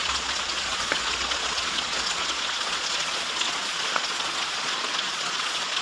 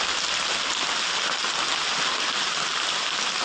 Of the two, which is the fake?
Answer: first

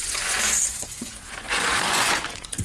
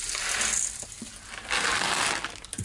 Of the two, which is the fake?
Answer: first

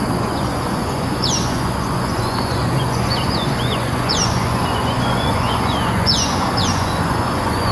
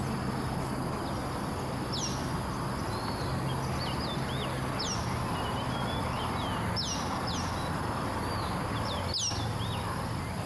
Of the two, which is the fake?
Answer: first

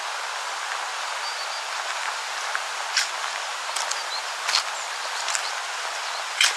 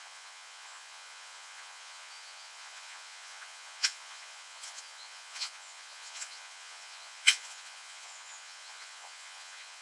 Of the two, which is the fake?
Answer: second